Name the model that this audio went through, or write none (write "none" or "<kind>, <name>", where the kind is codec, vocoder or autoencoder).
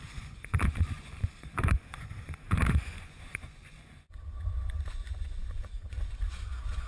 vocoder, Vocos